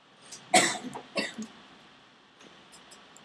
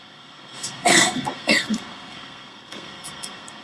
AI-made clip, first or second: second